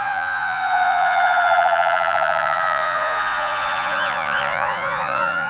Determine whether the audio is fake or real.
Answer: fake